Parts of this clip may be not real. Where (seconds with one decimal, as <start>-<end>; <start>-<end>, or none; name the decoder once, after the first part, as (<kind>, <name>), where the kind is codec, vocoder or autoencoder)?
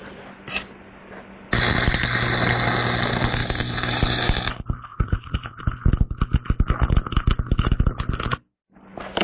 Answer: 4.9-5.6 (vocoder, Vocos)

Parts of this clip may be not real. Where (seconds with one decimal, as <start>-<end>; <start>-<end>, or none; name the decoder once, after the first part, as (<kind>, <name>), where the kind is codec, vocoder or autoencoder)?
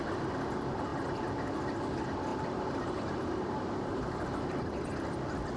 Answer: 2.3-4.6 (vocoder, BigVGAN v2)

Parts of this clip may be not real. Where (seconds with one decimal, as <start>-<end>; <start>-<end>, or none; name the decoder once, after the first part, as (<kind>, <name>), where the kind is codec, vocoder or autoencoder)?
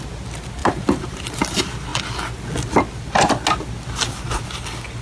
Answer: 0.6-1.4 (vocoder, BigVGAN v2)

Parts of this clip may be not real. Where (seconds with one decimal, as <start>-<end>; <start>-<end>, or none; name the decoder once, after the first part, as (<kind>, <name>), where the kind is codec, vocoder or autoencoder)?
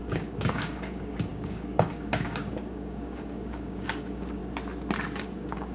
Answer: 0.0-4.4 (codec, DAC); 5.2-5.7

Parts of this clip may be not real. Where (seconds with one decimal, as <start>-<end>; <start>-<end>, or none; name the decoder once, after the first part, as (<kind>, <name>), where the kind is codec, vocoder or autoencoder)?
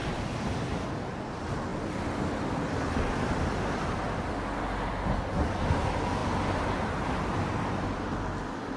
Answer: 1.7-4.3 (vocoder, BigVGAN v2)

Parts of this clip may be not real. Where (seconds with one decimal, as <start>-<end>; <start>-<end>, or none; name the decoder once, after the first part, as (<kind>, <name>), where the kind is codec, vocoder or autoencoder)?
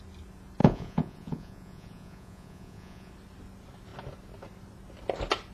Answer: 0.6-3.1 (vocoder, Vocos)